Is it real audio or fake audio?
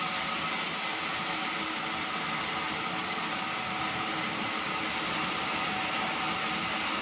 real